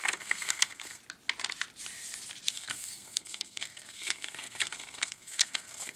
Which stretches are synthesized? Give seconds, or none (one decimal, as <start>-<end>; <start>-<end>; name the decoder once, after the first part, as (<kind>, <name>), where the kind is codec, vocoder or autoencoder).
0.0-1.0 (codec, SNAC); 2.5-6.0